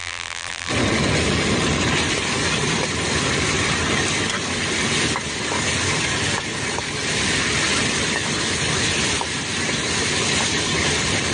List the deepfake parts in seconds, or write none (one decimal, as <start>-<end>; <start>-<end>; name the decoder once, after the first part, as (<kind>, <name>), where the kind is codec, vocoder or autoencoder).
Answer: 0.0-0.7 (vocoder, BigVGAN v2)